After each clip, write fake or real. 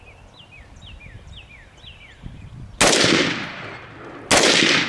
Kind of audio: real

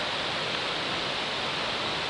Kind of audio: real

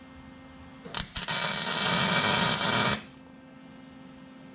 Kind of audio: real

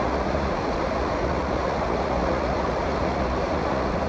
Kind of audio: fake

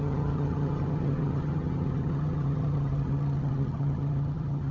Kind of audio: fake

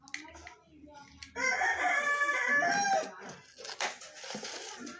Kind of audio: real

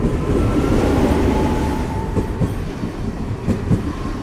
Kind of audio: fake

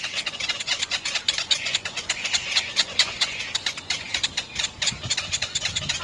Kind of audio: fake